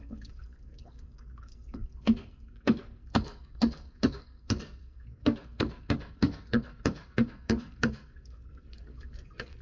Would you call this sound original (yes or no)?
no